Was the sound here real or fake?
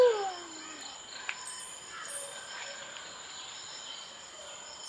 real